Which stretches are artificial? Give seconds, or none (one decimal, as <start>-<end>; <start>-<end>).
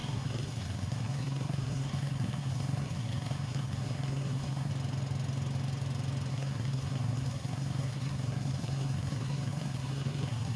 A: 0.0-4.7; 6.3-10.6